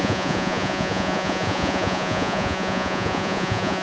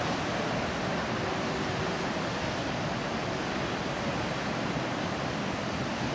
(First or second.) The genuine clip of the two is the second